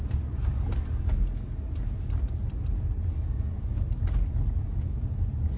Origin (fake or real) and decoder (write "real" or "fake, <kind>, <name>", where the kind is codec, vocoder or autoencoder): real